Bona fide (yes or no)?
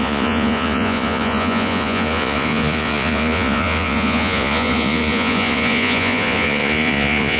no